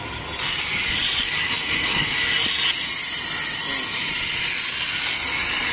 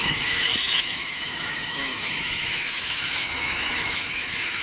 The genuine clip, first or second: first